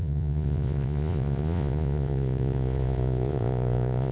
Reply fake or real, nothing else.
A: fake